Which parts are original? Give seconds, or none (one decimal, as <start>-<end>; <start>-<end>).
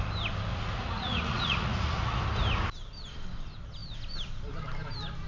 0.0-0.5; 2.2-5.3